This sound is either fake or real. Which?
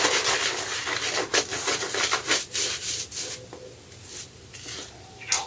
real